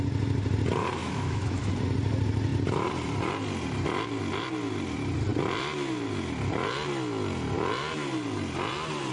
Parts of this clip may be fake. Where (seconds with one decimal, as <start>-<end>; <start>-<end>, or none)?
1.0-1.7